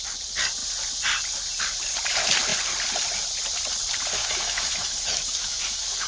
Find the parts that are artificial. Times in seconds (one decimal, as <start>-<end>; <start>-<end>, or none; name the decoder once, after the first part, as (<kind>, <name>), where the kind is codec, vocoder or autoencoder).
4.2-6.1 (autoencoder, DAC-VAE)